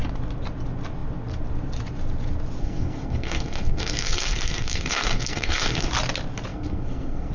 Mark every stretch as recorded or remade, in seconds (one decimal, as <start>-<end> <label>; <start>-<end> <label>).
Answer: 0.0-2.6 recorded; 2.6-5.9 remade; 5.9-6.5 recorded; 6.5-7.3 remade